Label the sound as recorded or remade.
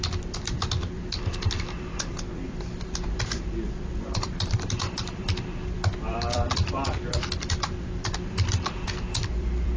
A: remade